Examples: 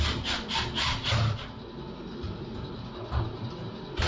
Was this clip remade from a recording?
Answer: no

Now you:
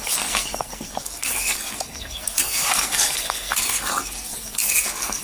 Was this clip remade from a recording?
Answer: yes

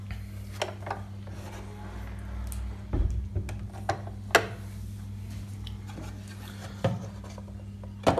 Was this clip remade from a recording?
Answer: no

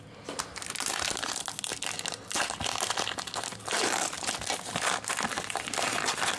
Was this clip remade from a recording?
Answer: no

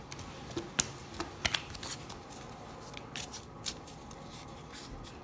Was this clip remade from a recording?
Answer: no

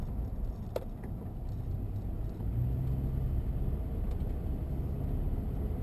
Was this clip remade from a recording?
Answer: no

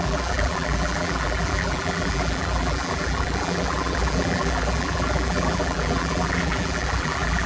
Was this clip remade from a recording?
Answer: yes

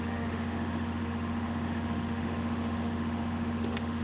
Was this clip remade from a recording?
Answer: yes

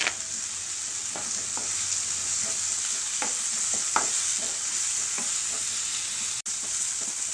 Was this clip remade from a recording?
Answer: no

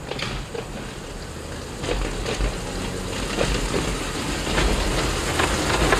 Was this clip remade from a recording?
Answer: no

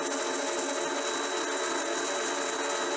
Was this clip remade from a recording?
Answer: no